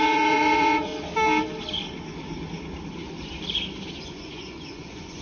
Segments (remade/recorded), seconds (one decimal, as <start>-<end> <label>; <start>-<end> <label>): 0.0-0.9 remade; 0.9-4.0 recorded; 4.0-5.2 remade